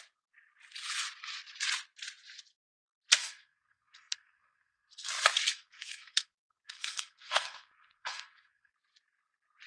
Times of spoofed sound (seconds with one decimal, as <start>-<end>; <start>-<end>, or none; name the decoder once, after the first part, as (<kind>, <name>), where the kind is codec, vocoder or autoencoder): 3.2-5.1 (codec, SNAC); 5.5-8.7